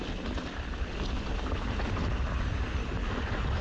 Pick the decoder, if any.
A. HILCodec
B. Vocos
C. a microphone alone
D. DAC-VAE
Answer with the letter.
C